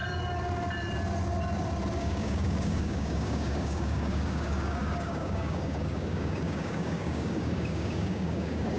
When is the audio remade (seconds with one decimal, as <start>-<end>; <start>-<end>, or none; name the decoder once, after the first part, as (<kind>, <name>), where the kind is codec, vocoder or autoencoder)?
2.0-8.8 (codec, DAC)